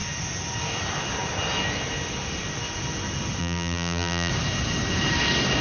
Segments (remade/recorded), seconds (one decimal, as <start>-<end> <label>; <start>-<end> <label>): 0.0-3.4 recorded; 3.4-4.3 remade; 4.3-5.6 recorded